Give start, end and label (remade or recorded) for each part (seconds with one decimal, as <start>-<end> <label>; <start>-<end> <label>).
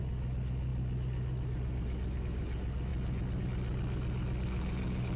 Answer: 0.0-5.2 recorded